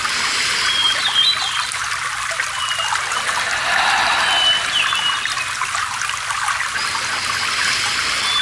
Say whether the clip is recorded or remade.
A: recorded